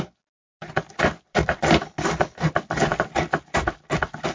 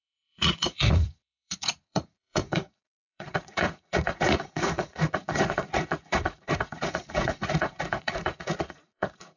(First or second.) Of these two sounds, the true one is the first